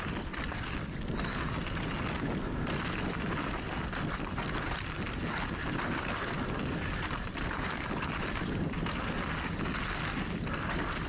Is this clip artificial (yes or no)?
no